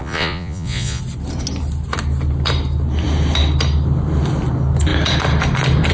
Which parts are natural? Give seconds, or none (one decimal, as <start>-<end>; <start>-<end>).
1.0-5.9